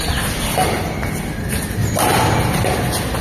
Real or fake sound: real